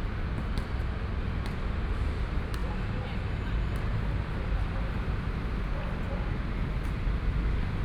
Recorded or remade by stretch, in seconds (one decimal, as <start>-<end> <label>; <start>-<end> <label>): 0.0-7.8 recorded